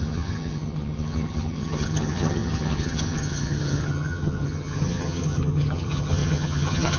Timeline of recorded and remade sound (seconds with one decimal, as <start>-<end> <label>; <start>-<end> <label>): 0.0-7.0 remade